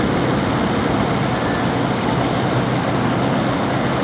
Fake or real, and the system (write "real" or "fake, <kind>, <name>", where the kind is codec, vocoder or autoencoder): real